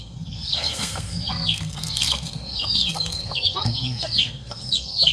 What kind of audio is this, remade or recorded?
remade